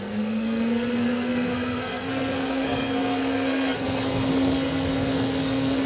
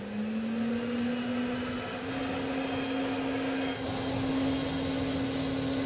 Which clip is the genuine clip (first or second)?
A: second